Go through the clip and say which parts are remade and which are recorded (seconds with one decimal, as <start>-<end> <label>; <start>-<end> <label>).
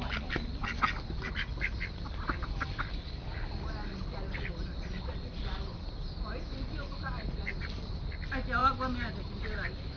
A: 0.0-10.0 recorded